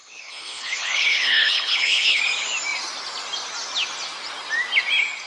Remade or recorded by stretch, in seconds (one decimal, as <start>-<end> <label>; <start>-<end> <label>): 0.0-2.2 remade; 2.2-5.3 recorded